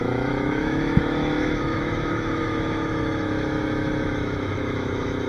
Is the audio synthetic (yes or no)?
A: yes